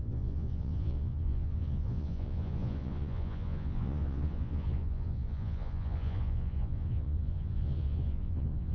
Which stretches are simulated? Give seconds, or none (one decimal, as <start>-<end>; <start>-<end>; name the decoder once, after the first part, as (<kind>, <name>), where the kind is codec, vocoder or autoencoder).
0.0-8.7 (vocoder, Vocos)